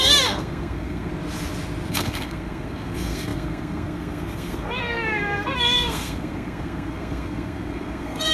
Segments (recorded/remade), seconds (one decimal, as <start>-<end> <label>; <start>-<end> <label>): 0.0-1.1 remade; 1.1-1.9 recorded; 1.9-8.3 remade